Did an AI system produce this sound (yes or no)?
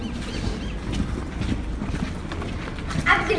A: no